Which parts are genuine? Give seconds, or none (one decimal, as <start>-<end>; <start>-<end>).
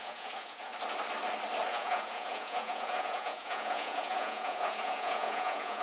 0.7-1.7